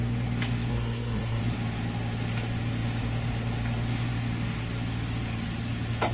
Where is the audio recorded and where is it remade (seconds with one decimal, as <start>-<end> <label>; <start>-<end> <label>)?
0.0-0.7 recorded; 0.7-1.4 remade; 1.4-6.1 recorded